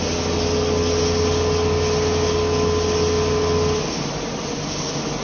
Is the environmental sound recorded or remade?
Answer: recorded